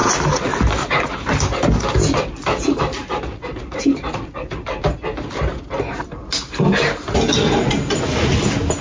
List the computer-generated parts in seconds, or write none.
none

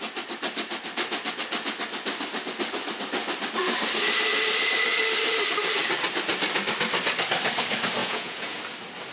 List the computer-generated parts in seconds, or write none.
8.0-8.6 (vocoder, Vocos)

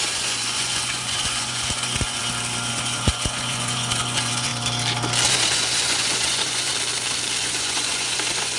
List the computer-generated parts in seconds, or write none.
0.0-2.2 (vocoder, Vocos); 2.7-4.5; 5.3-6.7; 7.4-8.6

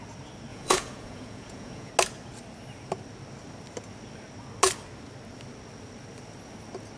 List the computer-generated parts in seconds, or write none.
0.5-1.9 (vocoder, Vocos)

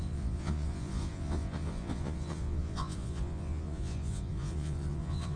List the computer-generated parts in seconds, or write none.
0.0-5.4 (vocoder, Vocos)

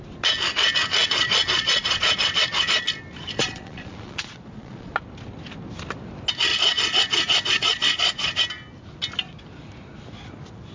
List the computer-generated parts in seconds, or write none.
1.0-2.8 (vocoder, Vocos); 3.4-4.9; 6.5-8.4

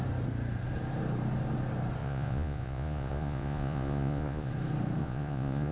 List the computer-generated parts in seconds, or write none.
2.0-4.5 (vocoder, Vocos); 5.0-5.7

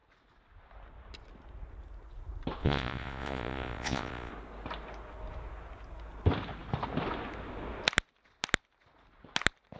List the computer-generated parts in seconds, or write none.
2.6-4.3 (vocoder, Vocos)